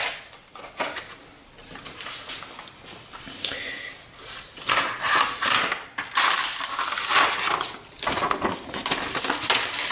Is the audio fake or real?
real